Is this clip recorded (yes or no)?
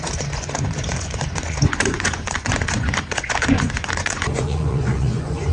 no